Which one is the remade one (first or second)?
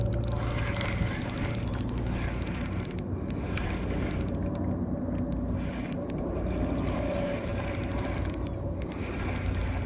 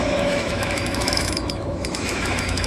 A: second